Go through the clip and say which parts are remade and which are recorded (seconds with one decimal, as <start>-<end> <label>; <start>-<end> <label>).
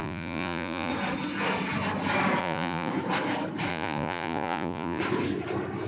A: 0.0-0.9 remade; 0.9-2.4 recorded; 2.4-2.9 remade; 2.9-3.7 recorded; 3.7-5.0 remade; 5.0-5.9 recorded